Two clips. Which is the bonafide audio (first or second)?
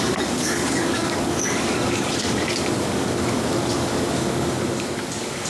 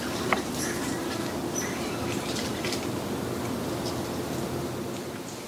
second